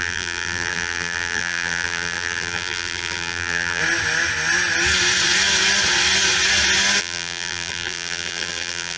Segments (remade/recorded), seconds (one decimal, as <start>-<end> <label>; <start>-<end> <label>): 0.0-3.8 remade; 3.8-7.0 recorded; 7.0-9.0 remade